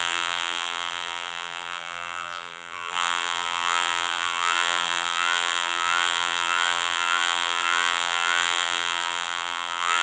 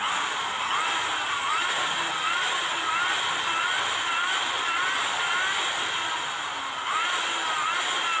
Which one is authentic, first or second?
second